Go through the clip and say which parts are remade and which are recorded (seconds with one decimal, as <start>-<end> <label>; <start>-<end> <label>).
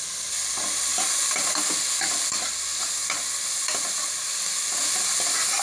0.0-5.6 recorded